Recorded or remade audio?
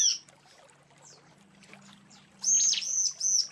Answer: recorded